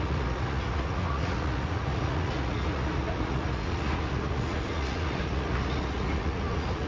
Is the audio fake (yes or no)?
yes